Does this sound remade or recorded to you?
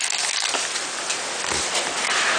recorded